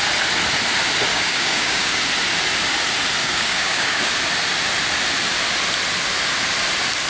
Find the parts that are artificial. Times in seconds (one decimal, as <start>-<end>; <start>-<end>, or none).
1.1-2.0; 3.2-4.0